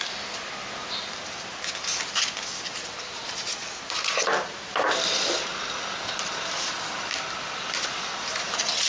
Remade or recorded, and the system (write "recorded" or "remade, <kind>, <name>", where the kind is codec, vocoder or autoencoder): recorded